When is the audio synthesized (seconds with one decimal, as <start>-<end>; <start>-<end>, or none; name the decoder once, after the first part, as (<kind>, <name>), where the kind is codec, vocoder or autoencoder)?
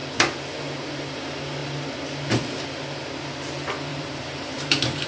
3.9-5.1 (vocoder, BigVGAN v2)